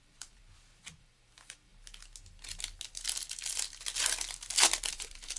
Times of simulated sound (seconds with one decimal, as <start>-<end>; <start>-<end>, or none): 0.0-0.4; 0.9-1.7; 4.9-5.4